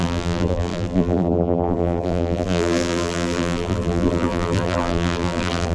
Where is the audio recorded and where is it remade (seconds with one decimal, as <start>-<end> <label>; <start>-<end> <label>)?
0.0-5.7 remade